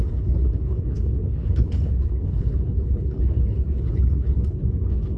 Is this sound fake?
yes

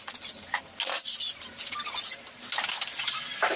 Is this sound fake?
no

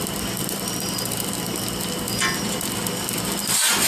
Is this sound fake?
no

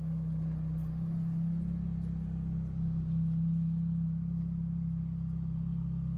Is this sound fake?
no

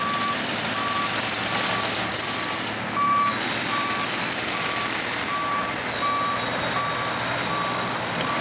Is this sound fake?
no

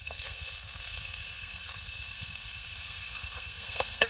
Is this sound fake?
yes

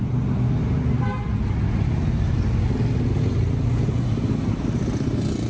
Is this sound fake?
no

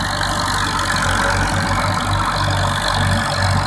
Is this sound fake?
no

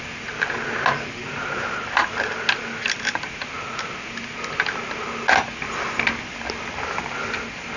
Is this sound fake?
no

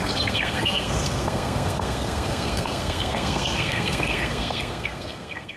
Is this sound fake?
yes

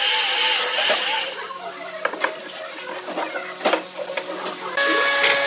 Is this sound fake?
no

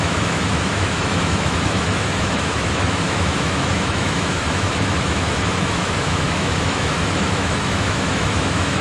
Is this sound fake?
yes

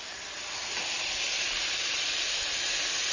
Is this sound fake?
yes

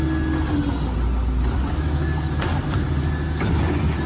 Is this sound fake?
no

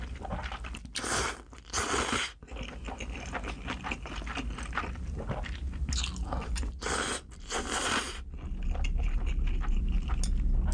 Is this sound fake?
no